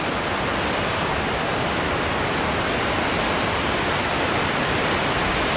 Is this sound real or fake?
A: real